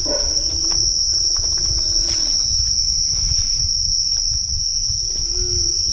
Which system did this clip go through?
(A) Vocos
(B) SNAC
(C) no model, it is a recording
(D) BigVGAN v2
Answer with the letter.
C